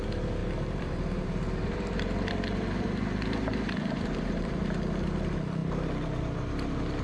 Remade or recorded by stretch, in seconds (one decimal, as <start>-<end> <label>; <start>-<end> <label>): 0.0-0.4 recorded; 0.4-4.6 remade; 4.6-7.0 recorded